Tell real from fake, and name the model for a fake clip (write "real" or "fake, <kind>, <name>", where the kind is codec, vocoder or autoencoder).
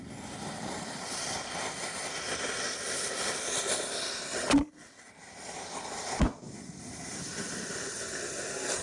real